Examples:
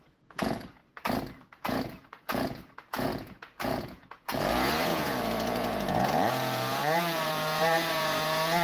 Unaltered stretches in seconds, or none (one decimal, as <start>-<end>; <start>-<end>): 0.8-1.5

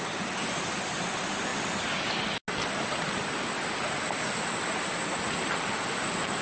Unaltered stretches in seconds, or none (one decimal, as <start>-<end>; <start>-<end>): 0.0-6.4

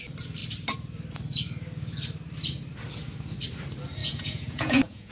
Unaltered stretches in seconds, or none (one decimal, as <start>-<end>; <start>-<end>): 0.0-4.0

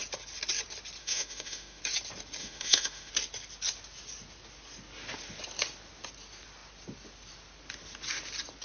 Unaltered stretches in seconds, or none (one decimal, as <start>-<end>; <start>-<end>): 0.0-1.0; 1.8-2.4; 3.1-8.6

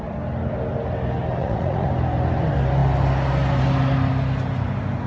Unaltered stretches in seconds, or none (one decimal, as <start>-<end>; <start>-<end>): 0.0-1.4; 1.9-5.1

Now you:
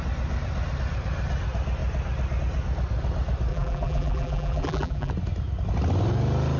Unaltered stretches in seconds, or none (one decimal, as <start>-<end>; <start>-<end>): 0.0-3.5; 5.1-6.6

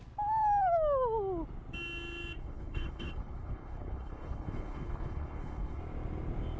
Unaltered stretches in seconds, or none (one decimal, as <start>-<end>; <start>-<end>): 0.0-2.4; 5.8-6.6